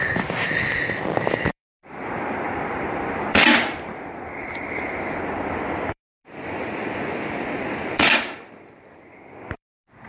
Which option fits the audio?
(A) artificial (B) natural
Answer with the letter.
A